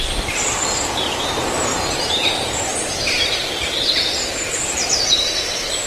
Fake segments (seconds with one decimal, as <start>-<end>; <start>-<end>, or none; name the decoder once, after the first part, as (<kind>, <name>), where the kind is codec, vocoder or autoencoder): 1.7-2.3 (vocoder, BigVGAN v2); 2.7-5.9